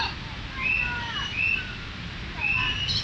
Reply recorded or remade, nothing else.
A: recorded